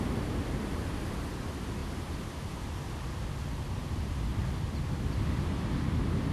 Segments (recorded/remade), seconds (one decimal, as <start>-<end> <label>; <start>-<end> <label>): 0.0-4.3 recorded; 4.3-4.9 remade; 4.9-6.3 recorded